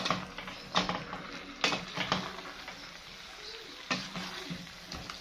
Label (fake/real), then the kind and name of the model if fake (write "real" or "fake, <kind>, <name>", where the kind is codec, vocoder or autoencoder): real